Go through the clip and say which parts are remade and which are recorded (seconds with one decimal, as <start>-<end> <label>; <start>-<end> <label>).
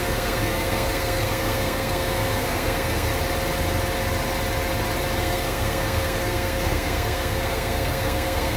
0.0-3.1 remade; 3.1-5.2 recorded; 5.2-8.6 remade